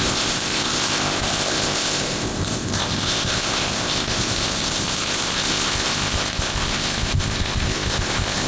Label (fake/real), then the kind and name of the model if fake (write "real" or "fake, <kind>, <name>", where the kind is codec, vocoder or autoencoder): fake, codec, ZipCodec